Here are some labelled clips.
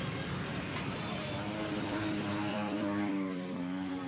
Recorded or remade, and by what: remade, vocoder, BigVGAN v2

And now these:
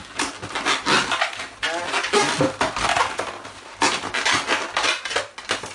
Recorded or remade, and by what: recorded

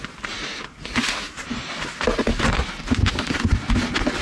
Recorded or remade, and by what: recorded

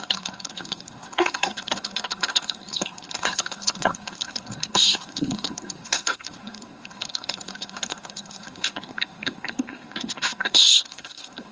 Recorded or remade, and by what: remade, codec, SNAC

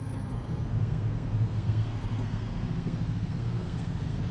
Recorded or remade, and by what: remade, codec, SNAC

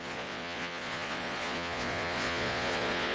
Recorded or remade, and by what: remade, vocoder, Vocos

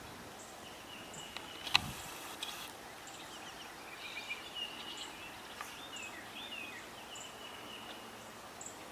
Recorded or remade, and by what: recorded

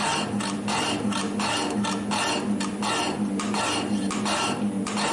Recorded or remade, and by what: recorded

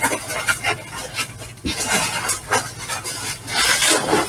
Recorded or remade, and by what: recorded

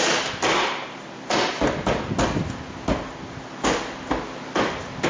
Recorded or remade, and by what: recorded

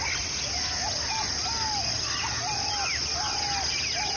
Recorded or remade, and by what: recorded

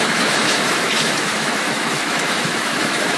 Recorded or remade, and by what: remade, autoencoder, DAC-VAE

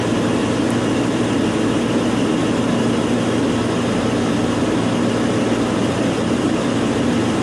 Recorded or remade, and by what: recorded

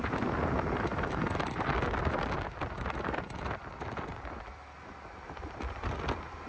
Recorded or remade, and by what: recorded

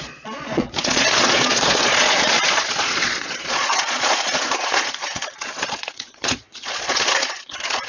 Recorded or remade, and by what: remade, vocoder, Vocos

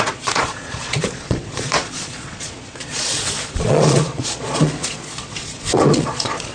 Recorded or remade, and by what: remade, vocoder, Vocos